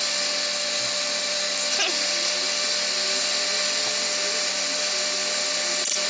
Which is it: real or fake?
real